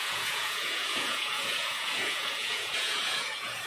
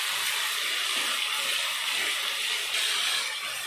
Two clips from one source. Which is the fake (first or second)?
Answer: first